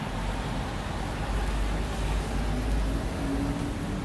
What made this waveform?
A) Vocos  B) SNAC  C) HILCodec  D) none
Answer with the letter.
D